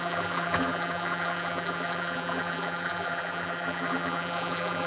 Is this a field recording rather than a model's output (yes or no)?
no